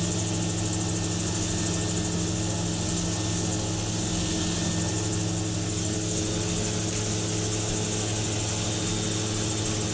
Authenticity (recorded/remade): recorded